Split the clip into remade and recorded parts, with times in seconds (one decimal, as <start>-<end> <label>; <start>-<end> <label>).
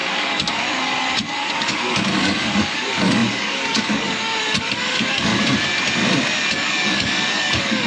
0.0-5.3 remade; 5.3-6.5 recorded; 6.5-7.9 remade